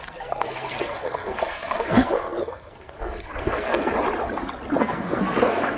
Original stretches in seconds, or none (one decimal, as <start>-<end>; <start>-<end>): 3.9-4.8